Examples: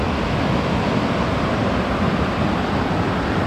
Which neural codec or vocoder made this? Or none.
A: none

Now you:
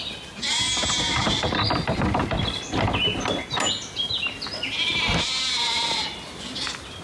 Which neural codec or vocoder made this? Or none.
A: none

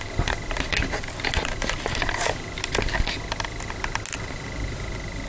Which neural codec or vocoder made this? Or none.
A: none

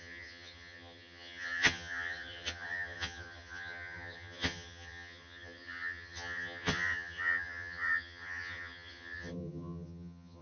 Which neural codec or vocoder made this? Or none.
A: vocoder, HiFi-GAN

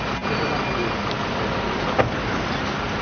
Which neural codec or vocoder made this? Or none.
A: none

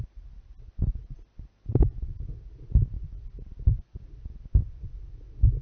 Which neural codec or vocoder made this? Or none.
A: none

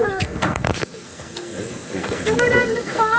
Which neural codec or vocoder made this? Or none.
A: codec, SNAC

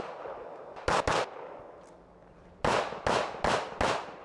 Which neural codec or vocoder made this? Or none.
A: none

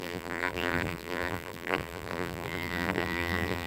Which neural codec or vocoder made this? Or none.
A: vocoder, BigVGAN v2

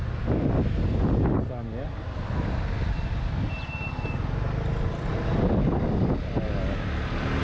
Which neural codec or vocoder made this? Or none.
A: none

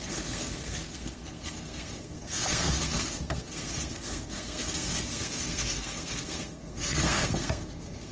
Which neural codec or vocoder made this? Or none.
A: codec, SNAC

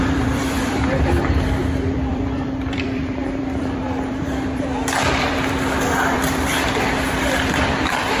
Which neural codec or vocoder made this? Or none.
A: vocoder, BigVGAN v2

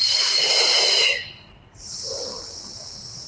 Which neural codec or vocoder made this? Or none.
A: none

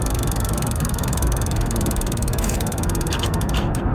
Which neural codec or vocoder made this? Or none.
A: codec, SNAC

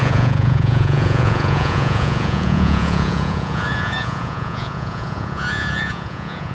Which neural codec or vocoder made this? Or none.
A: vocoder, Vocos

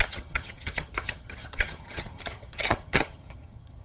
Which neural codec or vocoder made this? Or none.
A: vocoder, HiFi-GAN